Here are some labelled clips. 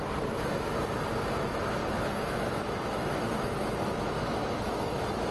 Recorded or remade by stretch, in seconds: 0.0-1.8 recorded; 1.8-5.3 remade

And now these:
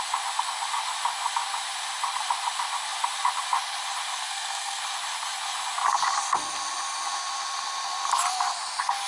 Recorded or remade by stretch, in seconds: 0.0-4.2 recorded; 4.2-4.8 remade; 4.8-9.1 recorded

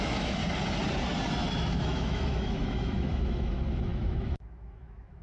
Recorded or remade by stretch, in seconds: 0.0-0.4 remade; 0.4-1.5 recorded; 1.5-5.2 remade

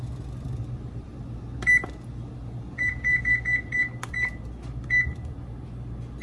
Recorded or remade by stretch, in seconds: 0.0-6.2 recorded

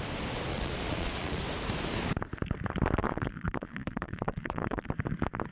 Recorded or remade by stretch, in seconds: 0.0-0.5 recorded; 0.5-1.4 remade; 1.4-3.0 recorded; 3.0-4.9 remade; 4.9-5.5 recorded

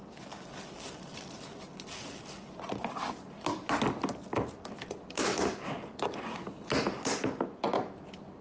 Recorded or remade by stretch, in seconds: 0.0-8.4 recorded

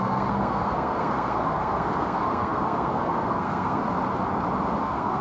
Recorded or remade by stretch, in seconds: 0.0-3.8 remade; 3.8-4.8 recorded; 4.8-5.2 remade